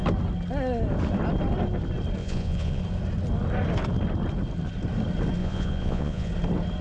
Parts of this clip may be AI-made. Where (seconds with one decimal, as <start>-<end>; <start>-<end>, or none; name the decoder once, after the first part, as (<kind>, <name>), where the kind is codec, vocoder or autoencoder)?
2.2-2.8 (vocoder, Vocos); 5.4-6.3